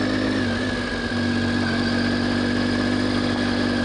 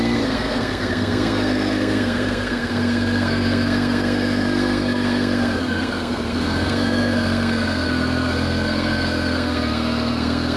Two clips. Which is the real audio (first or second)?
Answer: first